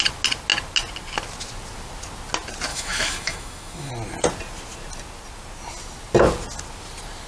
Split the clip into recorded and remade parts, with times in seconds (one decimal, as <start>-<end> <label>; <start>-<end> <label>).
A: 0.0-2.7 recorded; 2.7-3.9 remade; 3.9-7.3 recorded